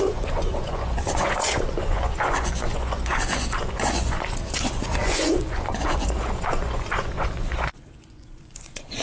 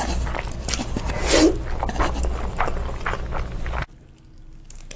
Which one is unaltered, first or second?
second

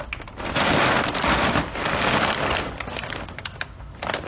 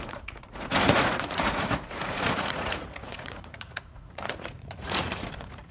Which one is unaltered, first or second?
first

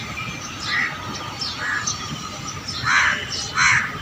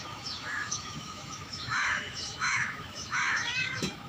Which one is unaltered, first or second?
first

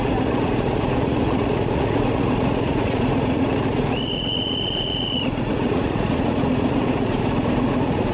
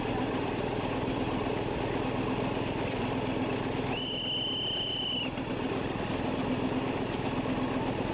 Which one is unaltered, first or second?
second